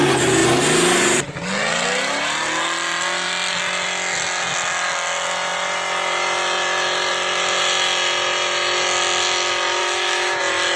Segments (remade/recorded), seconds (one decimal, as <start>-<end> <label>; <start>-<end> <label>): 0.0-9.8 recorded; 9.8-10.4 remade; 10.4-10.8 recorded